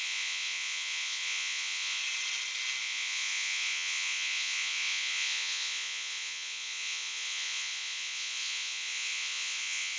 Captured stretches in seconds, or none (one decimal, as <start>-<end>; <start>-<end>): 2.0-2.8